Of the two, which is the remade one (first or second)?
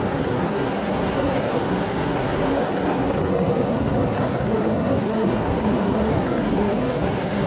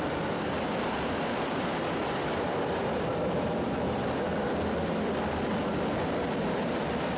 first